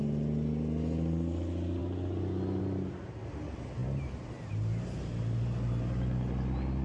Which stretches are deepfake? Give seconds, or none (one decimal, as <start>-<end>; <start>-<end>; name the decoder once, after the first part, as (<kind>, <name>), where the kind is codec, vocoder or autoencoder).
none